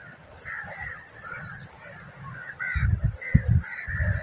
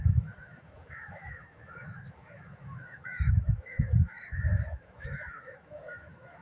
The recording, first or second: first